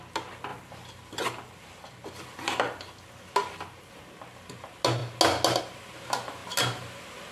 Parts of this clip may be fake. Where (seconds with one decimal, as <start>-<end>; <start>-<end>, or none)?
0.5-1.2